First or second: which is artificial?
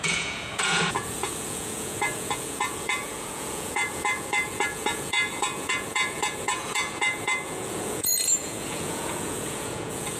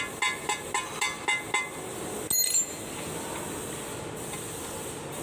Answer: first